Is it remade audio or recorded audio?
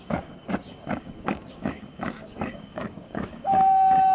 remade